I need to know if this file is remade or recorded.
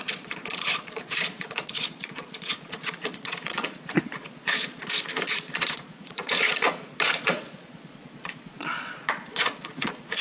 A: remade